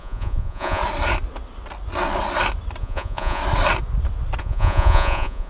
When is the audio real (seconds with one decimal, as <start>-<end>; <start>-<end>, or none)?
0.8-2.8; 3.4-4.4